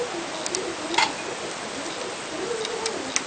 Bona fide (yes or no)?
yes